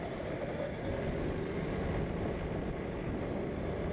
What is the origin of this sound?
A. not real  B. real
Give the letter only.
B